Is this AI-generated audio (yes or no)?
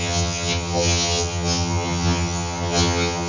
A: yes